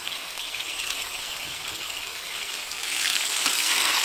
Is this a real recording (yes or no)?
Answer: no